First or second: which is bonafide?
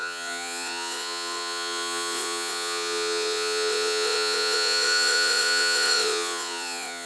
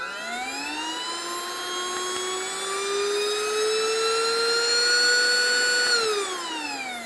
second